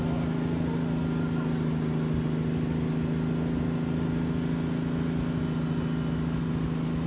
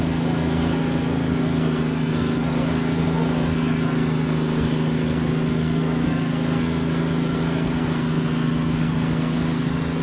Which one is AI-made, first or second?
second